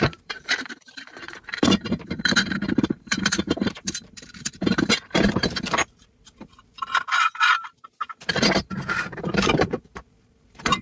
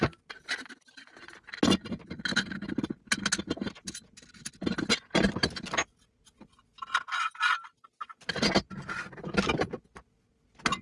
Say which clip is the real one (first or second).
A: second